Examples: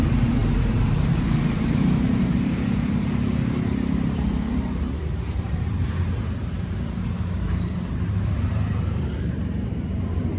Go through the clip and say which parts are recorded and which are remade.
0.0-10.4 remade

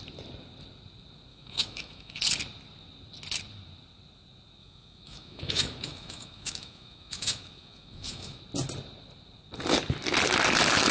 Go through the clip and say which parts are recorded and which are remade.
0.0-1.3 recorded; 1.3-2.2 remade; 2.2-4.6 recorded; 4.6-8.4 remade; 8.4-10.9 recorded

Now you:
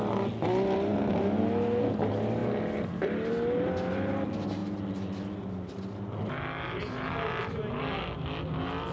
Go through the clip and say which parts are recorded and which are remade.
0.0-8.9 recorded

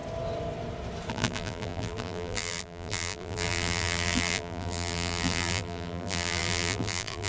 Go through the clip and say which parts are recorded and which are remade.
0.0-1.1 recorded; 1.1-7.3 remade

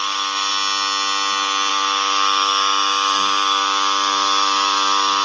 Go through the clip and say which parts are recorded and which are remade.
0.0-0.5 remade; 0.5-1.7 recorded; 1.7-5.2 remade